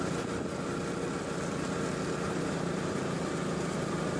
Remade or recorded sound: recorded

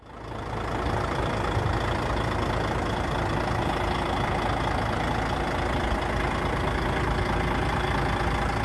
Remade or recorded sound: recorded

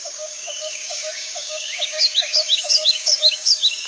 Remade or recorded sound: remade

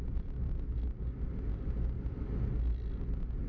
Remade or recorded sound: recorded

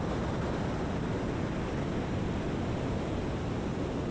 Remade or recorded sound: recorded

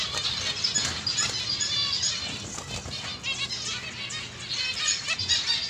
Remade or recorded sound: recorded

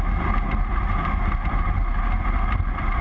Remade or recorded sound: recorded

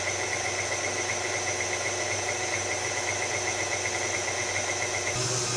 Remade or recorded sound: recorded